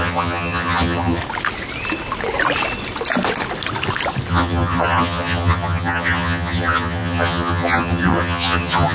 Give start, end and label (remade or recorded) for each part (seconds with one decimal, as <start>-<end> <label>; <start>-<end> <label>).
0.0-1.2 remade; 1.2-4.3 recorded; 4.3-8.9 remade